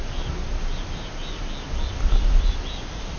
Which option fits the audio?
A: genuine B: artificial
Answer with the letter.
A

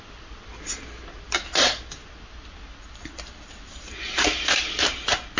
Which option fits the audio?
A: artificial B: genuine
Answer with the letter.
B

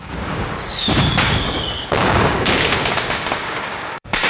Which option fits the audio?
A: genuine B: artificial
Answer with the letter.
B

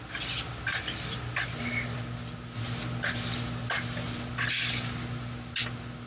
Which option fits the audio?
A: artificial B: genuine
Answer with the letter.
B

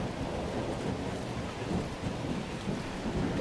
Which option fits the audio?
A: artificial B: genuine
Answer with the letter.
B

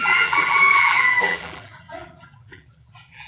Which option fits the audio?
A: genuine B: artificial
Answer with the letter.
B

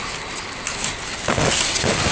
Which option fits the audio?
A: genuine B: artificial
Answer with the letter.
A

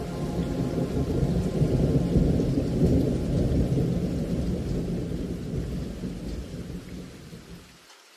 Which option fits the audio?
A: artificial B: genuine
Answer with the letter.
B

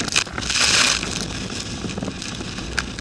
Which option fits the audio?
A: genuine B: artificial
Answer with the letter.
A